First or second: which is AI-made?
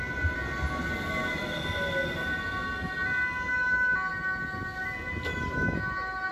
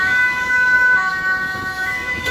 second